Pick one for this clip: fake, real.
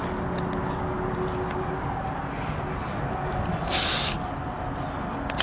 real